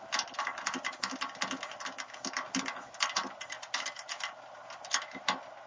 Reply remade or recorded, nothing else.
recorded